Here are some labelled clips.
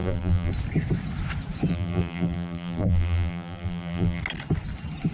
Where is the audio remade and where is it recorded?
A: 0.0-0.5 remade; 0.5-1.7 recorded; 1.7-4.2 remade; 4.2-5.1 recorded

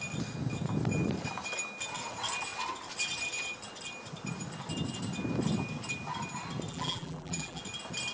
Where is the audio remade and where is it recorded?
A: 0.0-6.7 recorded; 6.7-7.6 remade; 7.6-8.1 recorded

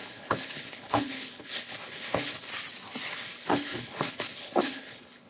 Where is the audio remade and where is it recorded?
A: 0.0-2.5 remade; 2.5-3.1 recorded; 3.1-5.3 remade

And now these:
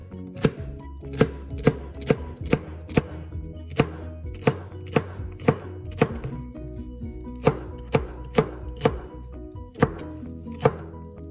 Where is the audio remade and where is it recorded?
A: 0.0-11.3 recorded

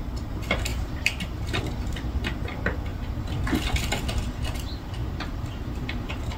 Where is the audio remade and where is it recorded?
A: 0.0-0.7 recorded; 0.7-1.6 remade; 1.6-2.9 recorded; 2.9-3.4 remade; 3.4-5.0 recorded; 5.0-6.4 remade

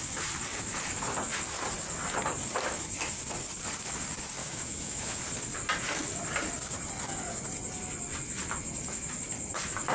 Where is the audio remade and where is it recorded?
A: 0.0-4.4 recorded; 4.4-5.2 remade; 5.2-9.9 recorded

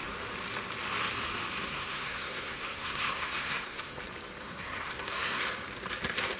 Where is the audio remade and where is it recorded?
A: 0.0-1.6 recorded; 1.6-4.0 remade; 4.0-4.4 recorded; 4.4-5.4 remade; 5.4-6.4 recorded

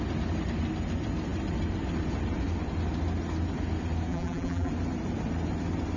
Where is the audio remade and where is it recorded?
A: 0.0-4.1 recorded; 4.1-4.7 remade; 4.7-6.0 recorded